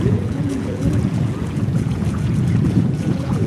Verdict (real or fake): fake